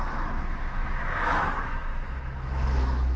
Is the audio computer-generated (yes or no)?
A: yes